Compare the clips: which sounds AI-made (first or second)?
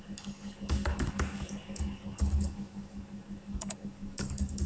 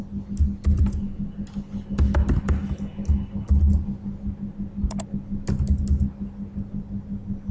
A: first